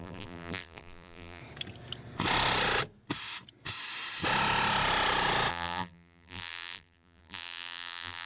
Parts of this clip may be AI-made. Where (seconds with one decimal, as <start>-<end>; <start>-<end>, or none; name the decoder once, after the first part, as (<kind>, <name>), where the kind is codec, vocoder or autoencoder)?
0.0-1.4 (vocoder, BigVGAN v2); 5.5-8.3